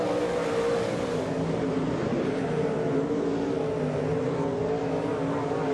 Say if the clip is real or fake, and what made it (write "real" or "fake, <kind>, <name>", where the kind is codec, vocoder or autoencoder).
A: real